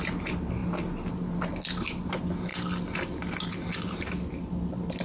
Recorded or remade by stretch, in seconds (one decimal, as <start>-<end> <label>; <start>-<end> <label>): 0.0-5.0 recorded

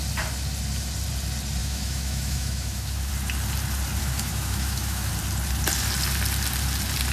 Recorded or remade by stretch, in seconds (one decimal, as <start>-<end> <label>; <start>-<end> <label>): 0.0-1.6 recorded; 1.6-3.1 remade; 3.1-4.0 recorded; 4.0-5.1 remade; 5.1-7.1 recorded